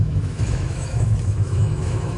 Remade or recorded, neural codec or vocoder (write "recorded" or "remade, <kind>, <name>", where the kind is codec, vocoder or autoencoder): remade, autoencoder, DAC-VAE